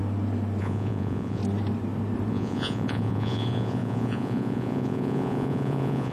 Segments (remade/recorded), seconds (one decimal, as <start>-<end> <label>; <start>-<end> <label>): 0.0-0.6 recorded; 0.6-1.4 remade; 1.4-2.3 recorded; 2.3-6.1 remade